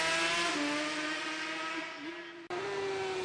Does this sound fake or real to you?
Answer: real